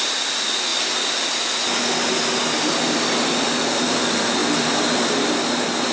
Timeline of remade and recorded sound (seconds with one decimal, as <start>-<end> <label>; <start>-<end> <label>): 0.0-5.9 recorded